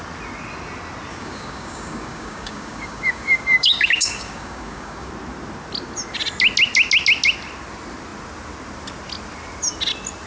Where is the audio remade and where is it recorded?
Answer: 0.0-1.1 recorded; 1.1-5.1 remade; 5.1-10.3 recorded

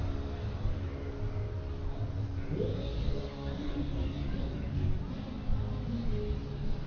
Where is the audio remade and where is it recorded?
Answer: 0.0-2.9 recorded; 2.9-5.0 remade; 5.0-6.9 recorded

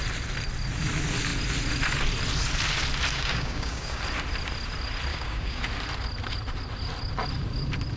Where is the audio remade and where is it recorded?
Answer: 0.0-3.1 recorded; 3.1-4.0 remade; 4.0-5.1 recorded; 5.1-5.6 remade; 5.6-8.0 recorded

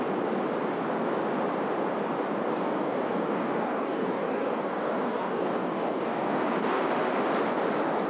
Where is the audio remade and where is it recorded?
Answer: 0.0-2.5 recorded; 2.5-6.8 remade; 6.8-8.1 recorded

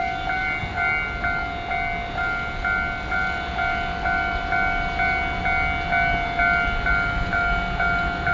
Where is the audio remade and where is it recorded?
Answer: 0.0-8.3 recorded

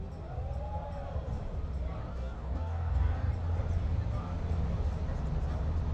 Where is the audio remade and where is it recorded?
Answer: 0.0-2.1 recorded; 2.1-3.3 remade; 3.3-5.9 recorded

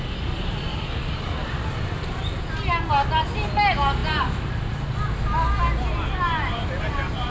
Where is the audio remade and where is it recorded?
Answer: 0.0-0.7 recorded; 0.7-1.2 remade; 1.2-7.3 recorded

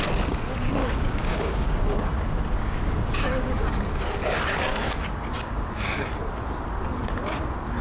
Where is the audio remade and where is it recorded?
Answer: 0.0-0.8 recorded; 0.8-3.9 remade; 3.9-4.7 recorded; 4.7-6.1 remade; 6.1-7.8 recorded